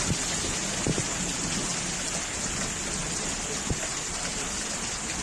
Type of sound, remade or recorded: recorded